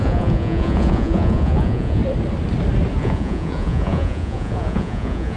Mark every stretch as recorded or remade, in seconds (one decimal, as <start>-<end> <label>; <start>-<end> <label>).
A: 0.0-2.0 remade; 2.0-3.0 recorded; 3.0-5.4 remade